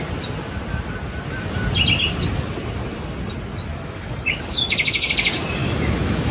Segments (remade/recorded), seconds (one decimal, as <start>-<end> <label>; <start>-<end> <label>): 0.0-3.7 recorded; 3.7-5.1 remade; 5.1-5.6 recorded; 5.6-6.3 remade